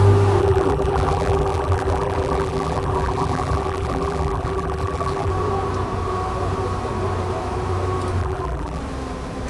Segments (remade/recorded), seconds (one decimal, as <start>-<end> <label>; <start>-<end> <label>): 0.0-0.4 recorded; 0.4-5.3 remade; 5.3-8.2 recorded; 8.2-8.8 remade; 8.8-9.5 recorded